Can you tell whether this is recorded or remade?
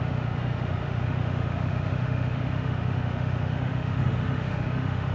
remade